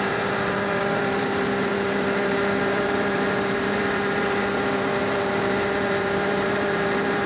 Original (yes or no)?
no